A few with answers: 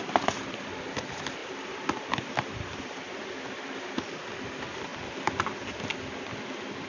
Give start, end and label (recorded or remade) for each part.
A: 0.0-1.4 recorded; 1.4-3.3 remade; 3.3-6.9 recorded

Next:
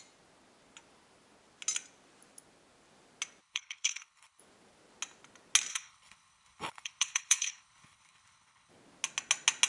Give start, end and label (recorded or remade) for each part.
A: 0.0-3.4 recorded; 3.4-4.4 remade; 4.4-5.7 recorded; 5.7-8.7 remade; 8.7-9.7 recorded

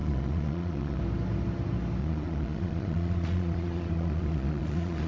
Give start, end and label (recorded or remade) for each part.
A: 0.0-1.0 remade; 1.0-2.0 recorded; 2.0-5.1 remade